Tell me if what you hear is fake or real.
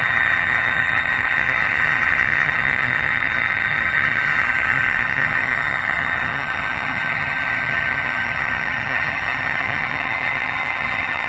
fake